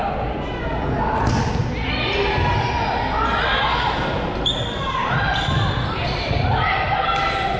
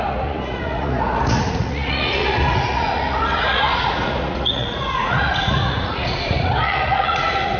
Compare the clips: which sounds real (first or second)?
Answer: first